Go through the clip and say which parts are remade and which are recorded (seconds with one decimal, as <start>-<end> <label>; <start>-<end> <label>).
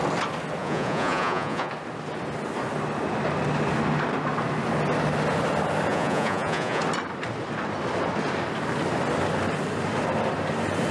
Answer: 0.0-0.6 recorded; 0.6-1.7 remade; 1.7-5.9 recorded; 5.9-6.8 remade; 6.8-10.9 recorded